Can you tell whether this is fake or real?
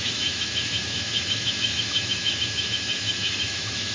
fake